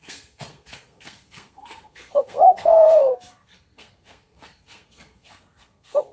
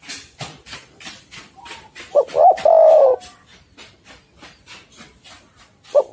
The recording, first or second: second